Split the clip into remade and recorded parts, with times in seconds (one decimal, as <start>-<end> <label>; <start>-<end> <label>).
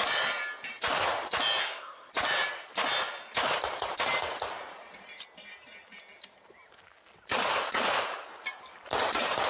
0.0-1.6 recorded; 1.6-2.1 remade; 2.1-9.5 recorded